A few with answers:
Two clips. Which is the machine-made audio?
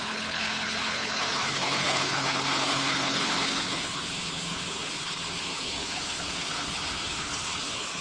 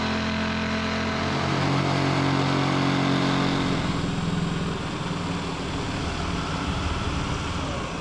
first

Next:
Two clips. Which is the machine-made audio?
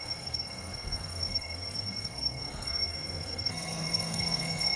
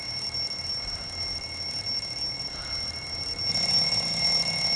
first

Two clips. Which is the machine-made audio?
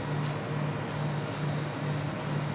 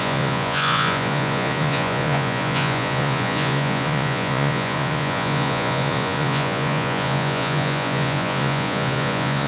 second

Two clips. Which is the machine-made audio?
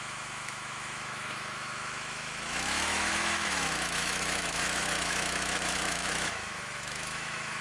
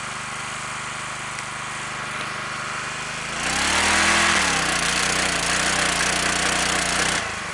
first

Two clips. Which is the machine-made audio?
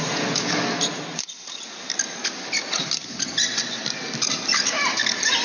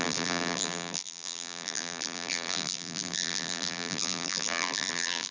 second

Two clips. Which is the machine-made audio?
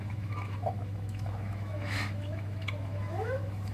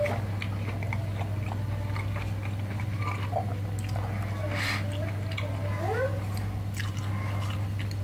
first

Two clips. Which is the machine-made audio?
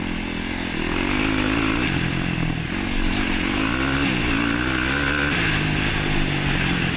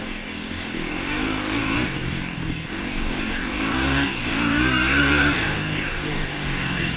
second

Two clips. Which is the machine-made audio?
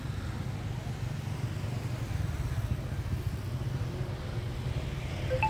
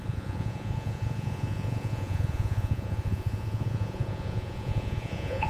second